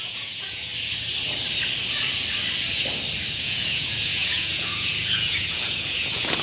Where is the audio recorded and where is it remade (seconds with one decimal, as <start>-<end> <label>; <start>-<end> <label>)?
0.0-0.7 remade; 0.7-3.3 recorded; 3.3-6.4 remade